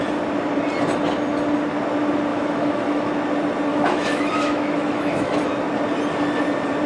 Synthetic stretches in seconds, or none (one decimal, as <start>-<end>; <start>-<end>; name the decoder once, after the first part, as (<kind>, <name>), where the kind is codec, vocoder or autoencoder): 2.3-3.1 (autoencoder, DAC-VAE); 3.7-5.4